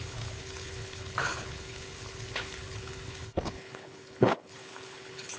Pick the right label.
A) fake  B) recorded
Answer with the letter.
A